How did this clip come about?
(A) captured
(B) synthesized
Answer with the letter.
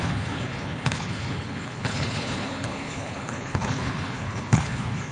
B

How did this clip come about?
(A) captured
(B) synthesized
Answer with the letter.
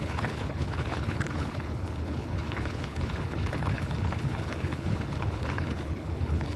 B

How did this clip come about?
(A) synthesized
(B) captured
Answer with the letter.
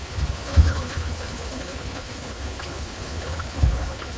A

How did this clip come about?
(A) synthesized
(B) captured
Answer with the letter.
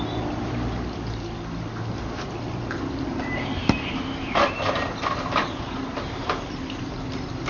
B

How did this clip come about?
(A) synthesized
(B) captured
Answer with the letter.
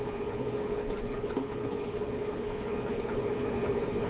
A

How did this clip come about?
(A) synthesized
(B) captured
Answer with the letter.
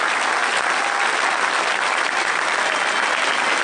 B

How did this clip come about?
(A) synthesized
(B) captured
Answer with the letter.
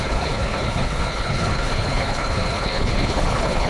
A